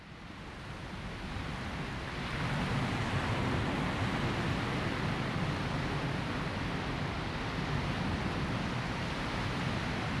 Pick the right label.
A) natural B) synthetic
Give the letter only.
A